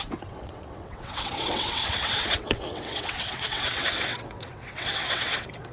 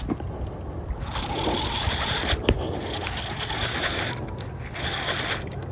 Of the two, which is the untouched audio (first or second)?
second